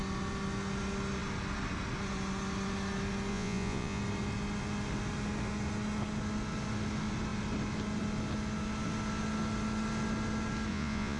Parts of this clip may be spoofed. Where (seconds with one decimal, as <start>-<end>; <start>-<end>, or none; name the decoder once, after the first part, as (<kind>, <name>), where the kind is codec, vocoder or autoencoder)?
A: 3.3-4.0 (vocoder, Vocos); 10.7-11.2